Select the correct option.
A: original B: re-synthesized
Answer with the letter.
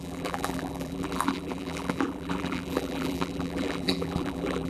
B